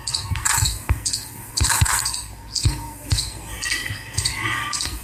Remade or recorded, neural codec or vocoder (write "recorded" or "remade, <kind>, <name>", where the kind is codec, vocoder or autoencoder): remade, codec, SNAC